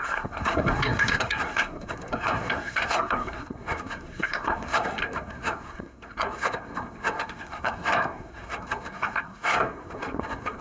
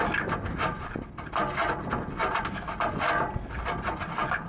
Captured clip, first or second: second